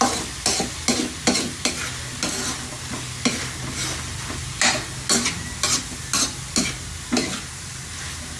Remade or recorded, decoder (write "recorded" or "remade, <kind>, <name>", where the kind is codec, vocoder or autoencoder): recorded